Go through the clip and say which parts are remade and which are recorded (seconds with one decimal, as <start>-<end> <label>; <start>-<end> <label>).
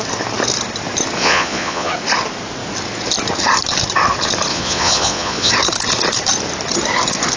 0.0-1.2 recorded; 1.2-1.9 remade; 1.9-4.5 recorded; 4.5-5.5 remade; 5.5-7.4 recorded